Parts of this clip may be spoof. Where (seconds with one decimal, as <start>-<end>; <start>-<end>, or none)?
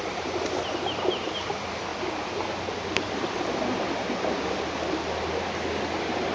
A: none